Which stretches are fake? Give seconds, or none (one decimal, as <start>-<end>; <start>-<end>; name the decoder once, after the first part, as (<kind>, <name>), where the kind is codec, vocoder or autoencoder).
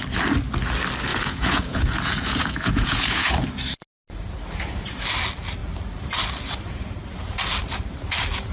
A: 1.1-3.3 (vocoder, Vocos)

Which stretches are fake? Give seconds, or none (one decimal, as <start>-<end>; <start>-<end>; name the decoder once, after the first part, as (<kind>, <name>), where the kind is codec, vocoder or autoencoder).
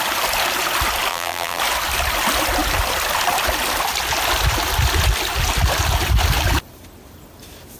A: 1.1-1.6 (vocoder, BigVGAN v2)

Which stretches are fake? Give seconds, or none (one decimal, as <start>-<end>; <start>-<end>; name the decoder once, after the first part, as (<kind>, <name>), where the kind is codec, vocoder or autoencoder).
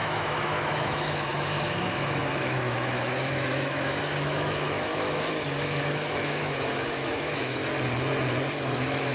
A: 0.0-7.6 (autoencoder, DAC-VAE); 8.6-9.1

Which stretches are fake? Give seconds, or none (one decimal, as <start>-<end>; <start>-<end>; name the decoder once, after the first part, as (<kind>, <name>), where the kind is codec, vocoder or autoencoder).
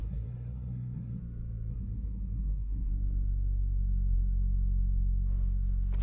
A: 0.0-1.2 (codec, SNAC); 1.7-2.9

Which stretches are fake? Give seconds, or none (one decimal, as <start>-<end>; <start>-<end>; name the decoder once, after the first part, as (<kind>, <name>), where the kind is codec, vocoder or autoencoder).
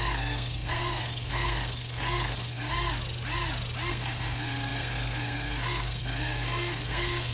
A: 0.0-2.7 (codec, SNAC); 3.9-7.3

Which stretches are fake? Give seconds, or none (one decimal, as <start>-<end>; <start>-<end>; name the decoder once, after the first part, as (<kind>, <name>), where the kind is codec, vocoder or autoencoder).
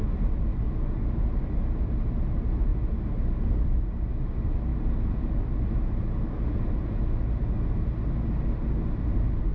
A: 4.7-7.0 (vocoder, BigVGAN v2)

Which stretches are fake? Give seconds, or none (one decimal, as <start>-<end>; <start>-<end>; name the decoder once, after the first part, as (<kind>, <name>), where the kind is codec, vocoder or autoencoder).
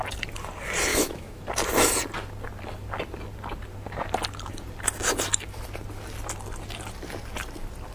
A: 0.9-1.4 (autoencoder, DAC-VAE)